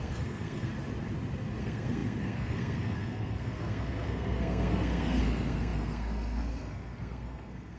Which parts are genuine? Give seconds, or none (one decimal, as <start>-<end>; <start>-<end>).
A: 0.7-1.6